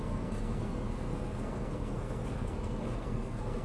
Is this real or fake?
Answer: fake